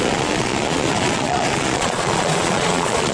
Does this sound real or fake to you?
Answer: fake